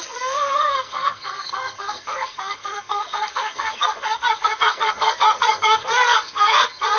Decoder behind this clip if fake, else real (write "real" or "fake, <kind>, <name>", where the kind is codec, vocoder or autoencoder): fake, codec, SNAC